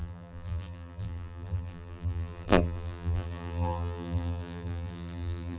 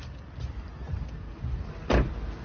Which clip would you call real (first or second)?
second